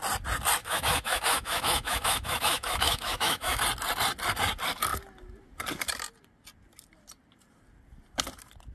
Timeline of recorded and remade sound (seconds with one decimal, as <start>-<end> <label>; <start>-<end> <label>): 0.0-0.6 recorded; 0.6-3.6 remade; 3.6-8.7 recorded